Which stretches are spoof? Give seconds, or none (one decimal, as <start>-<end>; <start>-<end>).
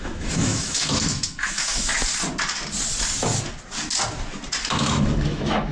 0.0-1.9; 4.6-5.7